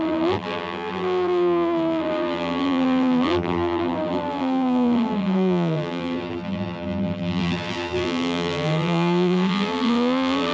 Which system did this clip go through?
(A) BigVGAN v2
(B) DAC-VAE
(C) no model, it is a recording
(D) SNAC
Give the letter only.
A